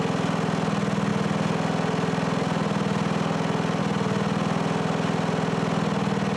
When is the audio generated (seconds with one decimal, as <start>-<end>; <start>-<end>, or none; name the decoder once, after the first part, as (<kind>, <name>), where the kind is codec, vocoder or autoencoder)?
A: none